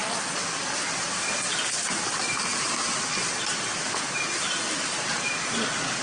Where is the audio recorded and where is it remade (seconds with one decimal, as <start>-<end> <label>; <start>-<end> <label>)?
0.0-6.0 recorded